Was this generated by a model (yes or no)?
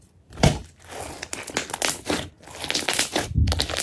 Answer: no